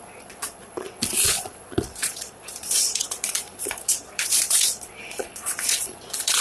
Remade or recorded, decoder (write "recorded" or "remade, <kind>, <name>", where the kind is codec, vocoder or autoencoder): remade, vocoder, Vocos